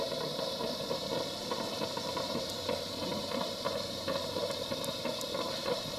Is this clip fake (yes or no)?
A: yes